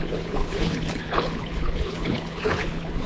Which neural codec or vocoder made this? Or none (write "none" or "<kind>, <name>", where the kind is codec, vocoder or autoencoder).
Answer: codec, HILCodec